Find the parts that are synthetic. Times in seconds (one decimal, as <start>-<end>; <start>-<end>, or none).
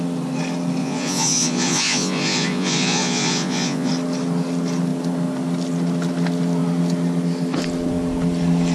0.8-3.9